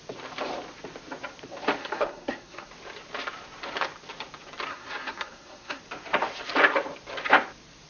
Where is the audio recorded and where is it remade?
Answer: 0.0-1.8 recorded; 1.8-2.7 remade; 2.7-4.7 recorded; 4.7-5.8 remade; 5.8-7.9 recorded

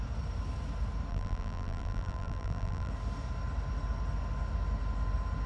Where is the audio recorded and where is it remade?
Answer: 0.0-1.1 recorded; 1.1-2.9 remade; 2.9-5.5 recorded

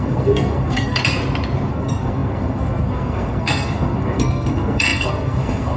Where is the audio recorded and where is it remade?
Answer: 0.0-1.0 remade; 1.0-1.7 recorded; 1.7-5.8 remade

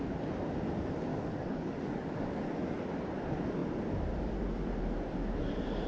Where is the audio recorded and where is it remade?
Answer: 0.0-1.1 recorded; 1.1-2.4 remade; 2.4-5.9 recorded

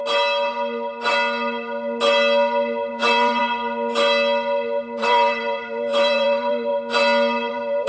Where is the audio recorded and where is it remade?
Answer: 0.0-2.9 recorded; 2.9-3.4 remade; 3.4-5.0 recorded; 5.0-6.7 remade; 6.7-7.5 recorded; 7.5-7.9 remade